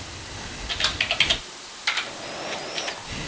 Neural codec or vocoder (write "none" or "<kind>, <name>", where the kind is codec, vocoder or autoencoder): none